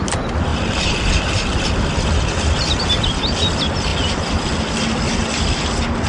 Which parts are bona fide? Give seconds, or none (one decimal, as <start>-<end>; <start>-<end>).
0.0-6.1

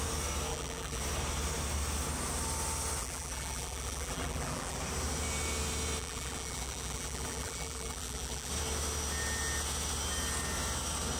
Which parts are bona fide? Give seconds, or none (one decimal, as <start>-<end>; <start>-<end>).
0.0-0.5; 1.0-3.0; 4.8-6.0; 8.5-11.2

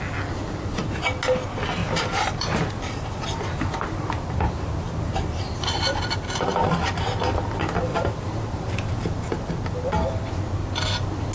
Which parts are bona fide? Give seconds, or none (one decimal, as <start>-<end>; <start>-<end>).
0.0-1.8; 6.9-7.9; 9.5-11.3

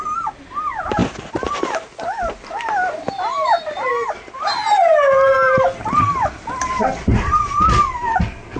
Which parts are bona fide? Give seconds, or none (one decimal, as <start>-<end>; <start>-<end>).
1.0-5.9

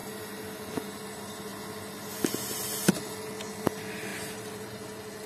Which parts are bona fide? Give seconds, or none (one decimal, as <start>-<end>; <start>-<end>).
0.0-5.3

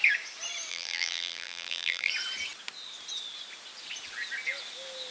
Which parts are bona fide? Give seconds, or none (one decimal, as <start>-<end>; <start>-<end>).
0.0-0.7; 2.1-5.1